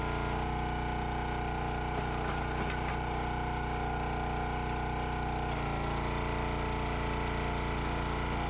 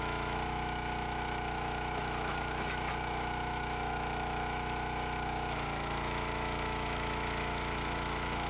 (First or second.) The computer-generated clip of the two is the second